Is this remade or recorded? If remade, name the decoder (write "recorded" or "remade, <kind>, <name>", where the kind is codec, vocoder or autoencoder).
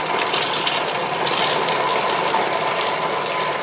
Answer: recorded